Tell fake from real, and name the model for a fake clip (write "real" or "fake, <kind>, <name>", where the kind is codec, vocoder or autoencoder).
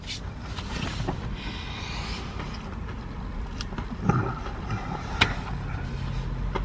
real